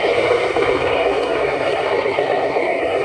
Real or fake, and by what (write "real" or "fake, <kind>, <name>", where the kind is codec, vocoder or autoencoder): fake, codec, SNAC